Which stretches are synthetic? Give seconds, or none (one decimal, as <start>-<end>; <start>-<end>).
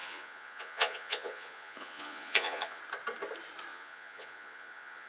0.0-2.8; 3.7-5.1